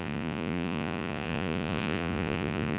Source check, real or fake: fake